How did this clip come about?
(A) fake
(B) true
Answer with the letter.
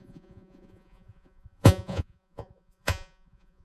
A